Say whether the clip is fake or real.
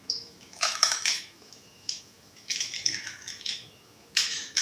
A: fake